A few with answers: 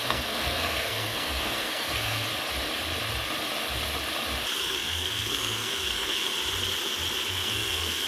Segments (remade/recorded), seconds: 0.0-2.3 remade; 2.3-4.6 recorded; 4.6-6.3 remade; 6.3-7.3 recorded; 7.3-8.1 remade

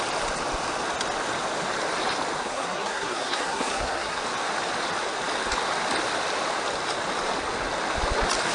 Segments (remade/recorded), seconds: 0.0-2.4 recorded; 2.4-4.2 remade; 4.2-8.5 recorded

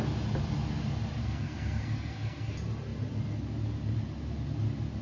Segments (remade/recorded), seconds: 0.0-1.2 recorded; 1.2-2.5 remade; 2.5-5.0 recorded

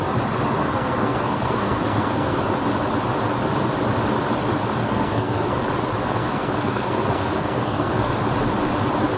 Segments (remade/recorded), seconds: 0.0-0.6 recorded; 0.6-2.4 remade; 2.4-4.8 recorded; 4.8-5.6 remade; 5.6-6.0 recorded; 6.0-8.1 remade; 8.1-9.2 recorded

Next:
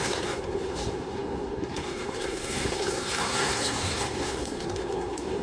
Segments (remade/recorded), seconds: 0.0-5.4 remade